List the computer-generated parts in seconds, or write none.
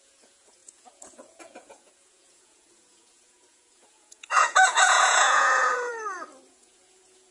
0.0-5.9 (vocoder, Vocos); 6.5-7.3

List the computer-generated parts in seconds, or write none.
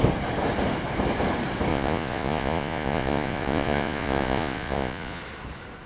1.7-5.2 (vocoder, Vocos)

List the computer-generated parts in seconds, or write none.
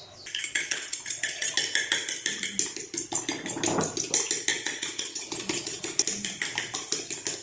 0.5-1.5 (vocoder, Vocos); 4.5-5.9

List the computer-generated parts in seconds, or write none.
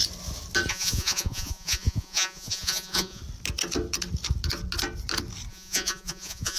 0.7-3.2 (vocoder, Vocos); 5.5-6.6